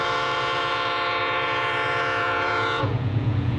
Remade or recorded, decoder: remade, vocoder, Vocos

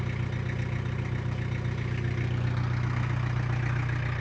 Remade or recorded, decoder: recorded